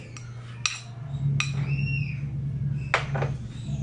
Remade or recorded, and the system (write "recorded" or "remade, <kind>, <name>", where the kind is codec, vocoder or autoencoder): recorded